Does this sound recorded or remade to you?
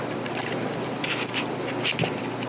remade